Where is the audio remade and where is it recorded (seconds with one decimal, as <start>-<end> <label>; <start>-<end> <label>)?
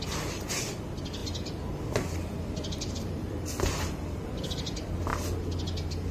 0.0-5.1 remade; 5.1-6.1 recorded